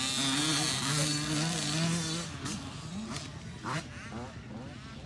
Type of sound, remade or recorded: recorded